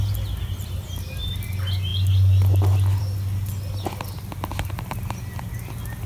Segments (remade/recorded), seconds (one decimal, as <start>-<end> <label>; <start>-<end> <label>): 0.0-6.1 recorded